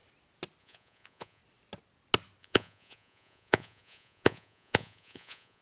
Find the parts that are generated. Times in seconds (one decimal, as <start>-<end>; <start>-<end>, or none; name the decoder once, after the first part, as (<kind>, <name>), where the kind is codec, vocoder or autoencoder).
0.6-1.4 (vocoder, Vocos); 2.4-5.6